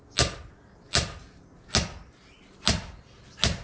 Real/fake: real